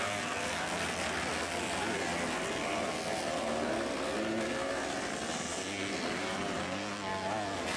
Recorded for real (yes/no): yes